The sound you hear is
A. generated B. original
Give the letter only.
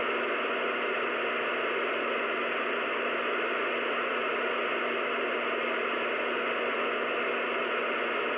B